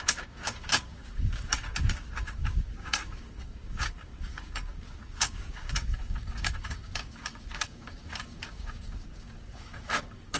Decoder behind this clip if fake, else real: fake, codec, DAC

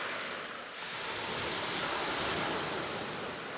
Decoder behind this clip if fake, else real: real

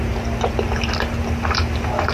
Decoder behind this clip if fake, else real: real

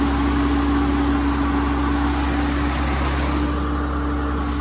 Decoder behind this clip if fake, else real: real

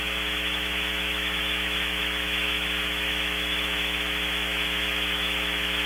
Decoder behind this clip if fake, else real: fake, autoencoder, DAC-VAE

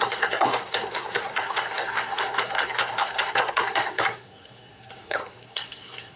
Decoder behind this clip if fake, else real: fake, codec, SNAC